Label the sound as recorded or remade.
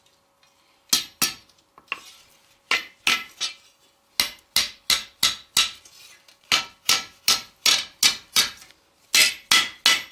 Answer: recorded